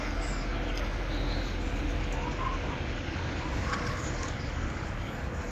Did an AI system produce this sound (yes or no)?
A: yes